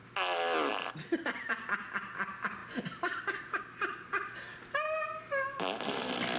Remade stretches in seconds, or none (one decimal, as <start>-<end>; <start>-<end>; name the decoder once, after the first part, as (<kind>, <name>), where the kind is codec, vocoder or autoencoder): none